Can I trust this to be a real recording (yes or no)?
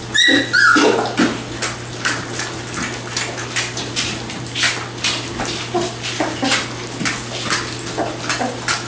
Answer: yes